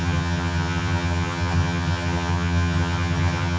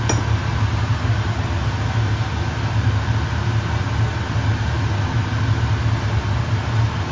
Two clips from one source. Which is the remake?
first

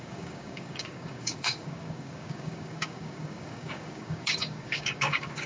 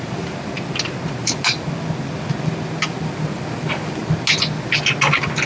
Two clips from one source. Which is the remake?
first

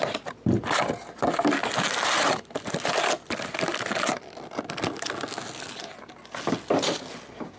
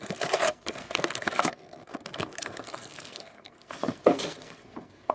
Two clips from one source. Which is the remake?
second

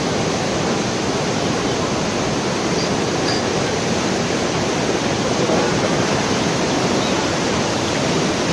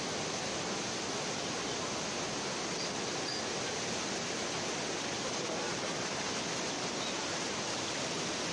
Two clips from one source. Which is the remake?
first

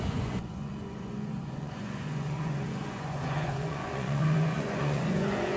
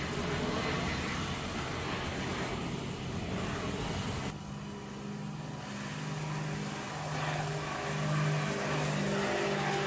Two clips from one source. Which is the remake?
first